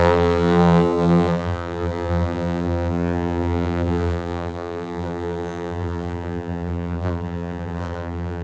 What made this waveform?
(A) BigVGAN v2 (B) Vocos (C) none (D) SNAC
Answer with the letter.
A